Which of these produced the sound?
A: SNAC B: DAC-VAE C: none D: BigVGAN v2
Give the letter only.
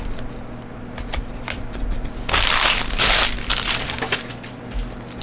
C